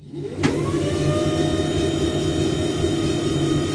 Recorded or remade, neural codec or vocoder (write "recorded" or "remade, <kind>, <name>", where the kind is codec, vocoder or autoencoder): recorded